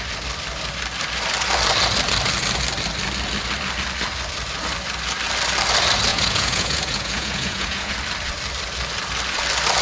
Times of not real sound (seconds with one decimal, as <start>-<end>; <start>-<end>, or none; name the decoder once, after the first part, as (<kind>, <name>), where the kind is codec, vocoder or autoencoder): 6.1-7.9 (vocoder, Vocos)